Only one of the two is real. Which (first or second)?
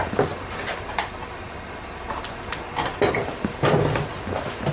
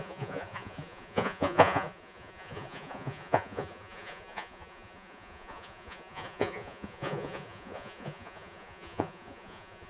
first